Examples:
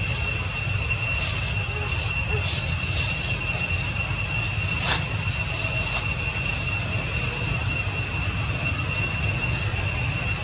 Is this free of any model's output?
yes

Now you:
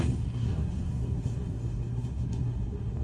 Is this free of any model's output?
no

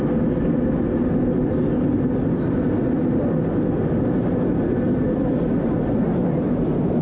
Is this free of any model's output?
yes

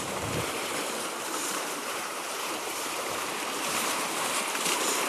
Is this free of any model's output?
no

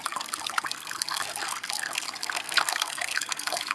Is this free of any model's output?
no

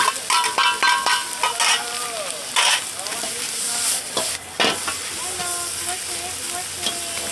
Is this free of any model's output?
yes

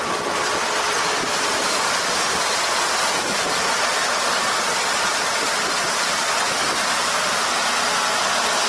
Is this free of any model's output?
yes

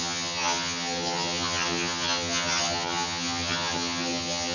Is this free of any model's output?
no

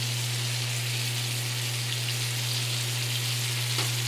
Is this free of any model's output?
yes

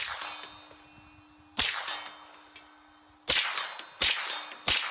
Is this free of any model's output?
yes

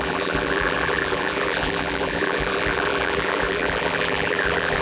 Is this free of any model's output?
no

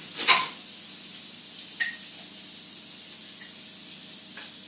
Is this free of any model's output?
yes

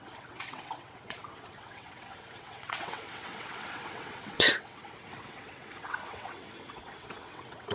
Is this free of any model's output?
no